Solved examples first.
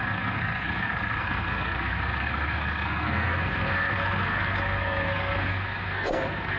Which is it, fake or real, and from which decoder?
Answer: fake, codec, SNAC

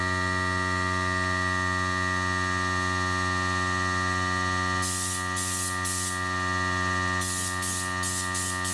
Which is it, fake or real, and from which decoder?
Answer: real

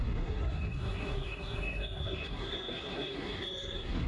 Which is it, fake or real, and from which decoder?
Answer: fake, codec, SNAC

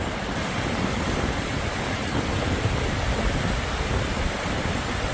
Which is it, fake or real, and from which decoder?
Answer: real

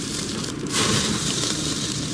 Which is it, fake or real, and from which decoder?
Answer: fake, vocoder, BigVGAN v2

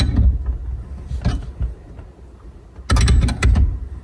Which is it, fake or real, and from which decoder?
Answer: real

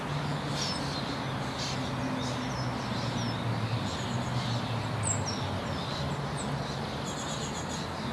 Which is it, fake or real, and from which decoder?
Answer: real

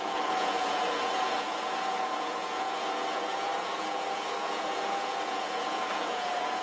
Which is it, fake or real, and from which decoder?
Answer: fake, vocoder, Vocos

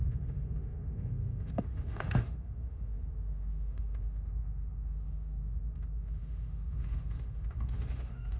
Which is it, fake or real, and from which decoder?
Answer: fake, autoencoder, DAC-VAE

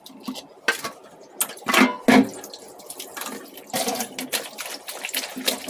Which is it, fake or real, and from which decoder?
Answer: real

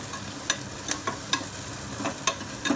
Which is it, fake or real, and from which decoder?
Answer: real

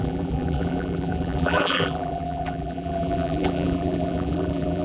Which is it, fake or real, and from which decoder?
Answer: fake, vocoder, BigVGAN v2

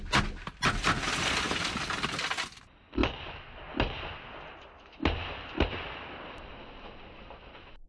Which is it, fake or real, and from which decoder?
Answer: real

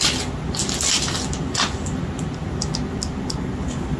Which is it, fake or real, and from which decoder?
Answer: real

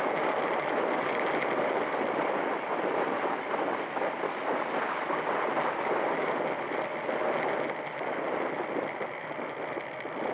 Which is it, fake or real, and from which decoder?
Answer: real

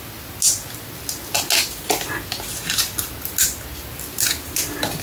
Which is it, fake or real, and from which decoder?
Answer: real